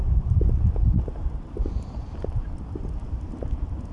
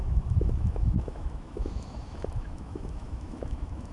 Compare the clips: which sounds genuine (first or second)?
first